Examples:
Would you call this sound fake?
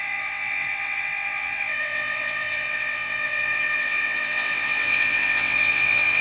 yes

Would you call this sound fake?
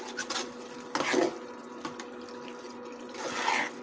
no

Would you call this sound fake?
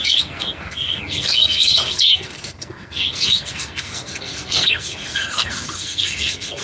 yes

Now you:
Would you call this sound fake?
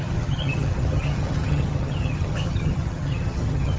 yes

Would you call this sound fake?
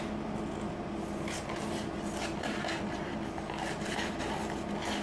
no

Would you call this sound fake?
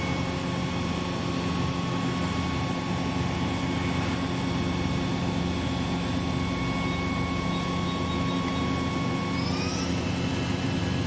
no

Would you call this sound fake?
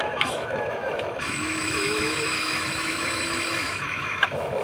yes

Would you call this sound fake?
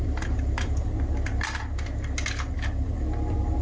no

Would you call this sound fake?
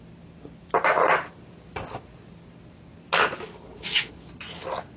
no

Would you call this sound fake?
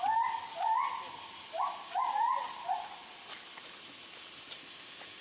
no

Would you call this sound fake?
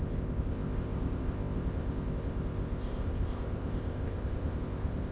yes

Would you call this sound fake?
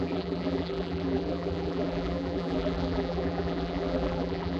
yes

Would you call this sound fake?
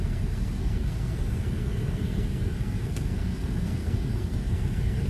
yes